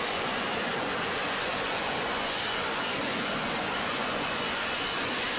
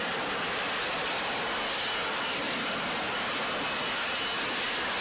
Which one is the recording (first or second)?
second